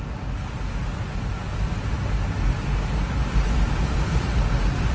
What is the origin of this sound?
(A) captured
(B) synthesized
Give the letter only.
A